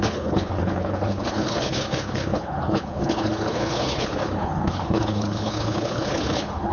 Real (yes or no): no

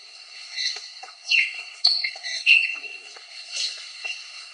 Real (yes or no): no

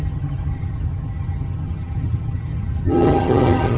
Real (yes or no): no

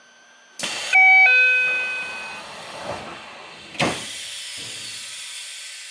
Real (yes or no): yes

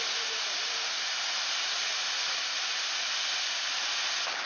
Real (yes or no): yes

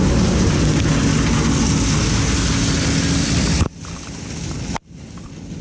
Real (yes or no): yes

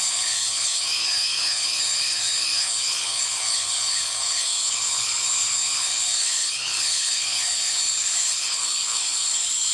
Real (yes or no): no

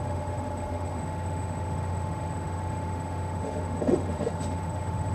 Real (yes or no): no